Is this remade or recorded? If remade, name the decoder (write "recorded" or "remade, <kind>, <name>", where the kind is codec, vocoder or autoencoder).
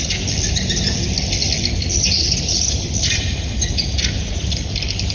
recorded